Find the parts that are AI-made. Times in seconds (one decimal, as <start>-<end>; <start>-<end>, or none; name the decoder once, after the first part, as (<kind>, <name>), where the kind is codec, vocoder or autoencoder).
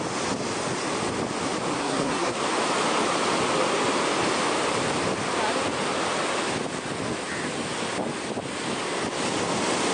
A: 1.8-2.4 (codec, SNAC)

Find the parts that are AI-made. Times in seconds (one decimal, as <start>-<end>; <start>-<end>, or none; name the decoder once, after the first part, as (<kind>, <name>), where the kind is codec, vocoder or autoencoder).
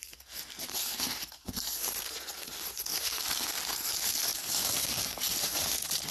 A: 0.0-6.1 (codec, SNAC)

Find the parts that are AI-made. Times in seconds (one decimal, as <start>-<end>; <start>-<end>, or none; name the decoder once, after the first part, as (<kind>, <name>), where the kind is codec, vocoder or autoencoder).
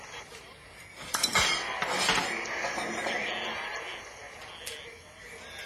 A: none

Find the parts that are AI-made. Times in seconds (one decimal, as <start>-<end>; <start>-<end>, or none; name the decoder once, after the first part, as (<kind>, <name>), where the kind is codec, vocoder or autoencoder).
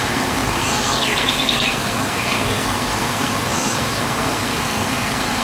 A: 0.0-5.4 (codec, SNAC)